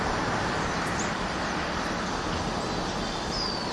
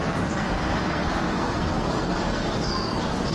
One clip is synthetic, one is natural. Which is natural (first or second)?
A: first